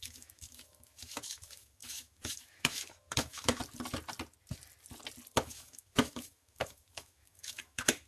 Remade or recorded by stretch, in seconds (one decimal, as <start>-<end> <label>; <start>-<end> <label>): 0.0-3.6 remade; 3.6-5.3 recorded; 5.3-8.1 remade